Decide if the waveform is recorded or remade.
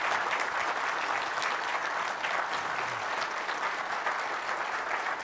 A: recorded